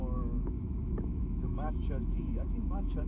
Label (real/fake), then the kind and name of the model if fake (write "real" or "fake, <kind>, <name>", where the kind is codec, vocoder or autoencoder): fake, autoencoder, DAC-VAE